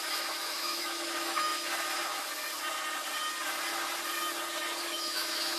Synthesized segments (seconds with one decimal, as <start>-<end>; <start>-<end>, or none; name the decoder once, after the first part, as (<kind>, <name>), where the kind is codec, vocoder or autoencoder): 0.0-1.5 (autoencoder, DAC-VAE); 4.8-5.6